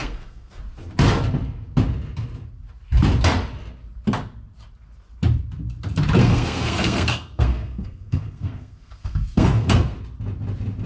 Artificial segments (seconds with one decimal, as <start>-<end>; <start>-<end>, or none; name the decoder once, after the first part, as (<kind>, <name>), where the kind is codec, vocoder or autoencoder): 0.0-0.6 (codec, SNAC); 6.2-10.0